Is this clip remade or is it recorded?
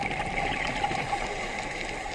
recorded